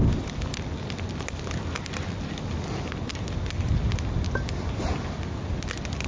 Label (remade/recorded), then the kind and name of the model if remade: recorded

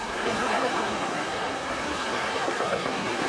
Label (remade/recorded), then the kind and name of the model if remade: remade, codec, SNAC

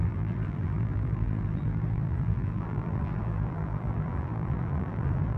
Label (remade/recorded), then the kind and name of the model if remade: remade, vocoder, BigVGAN v2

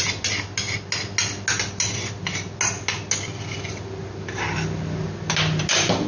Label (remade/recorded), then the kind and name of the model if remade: recorded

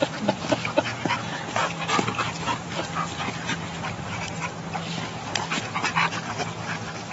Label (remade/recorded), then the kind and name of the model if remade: recorded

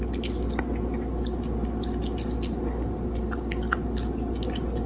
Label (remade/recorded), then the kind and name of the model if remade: recorded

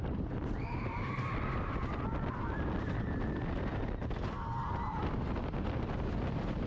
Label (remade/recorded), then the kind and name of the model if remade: recorded